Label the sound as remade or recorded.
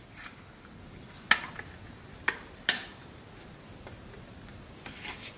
recorded